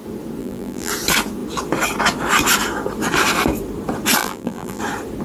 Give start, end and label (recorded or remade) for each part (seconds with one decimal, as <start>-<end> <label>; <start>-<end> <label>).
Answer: 0.0-0.4 recorded; 0.4-0.9 remade; 0.9-4.2 recorded; 4.2-4.8 remade; 4.8-5.2 recorded

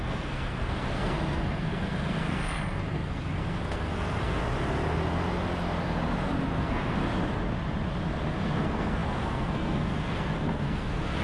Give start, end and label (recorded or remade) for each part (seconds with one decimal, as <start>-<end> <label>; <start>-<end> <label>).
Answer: 0.0-4.4 remade; 4.4-6.5 recorded; 6.5-7.0 remade; 7.0-8.3 recorded; 8.3-11.2 remade

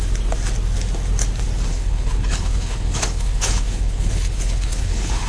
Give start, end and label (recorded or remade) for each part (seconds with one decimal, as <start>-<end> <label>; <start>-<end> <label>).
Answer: 0.0-1.7 recorded; 1.7-5.3 remade

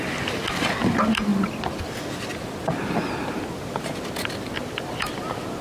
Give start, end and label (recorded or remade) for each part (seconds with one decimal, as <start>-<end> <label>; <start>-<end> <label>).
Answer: 0.0-5.6 recorded

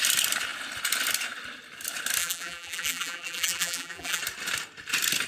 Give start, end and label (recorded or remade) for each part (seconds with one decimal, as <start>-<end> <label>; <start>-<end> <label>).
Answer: 0.0-2.2 recorded; 2.2-4.2 remade; 4.2-5.3 recorded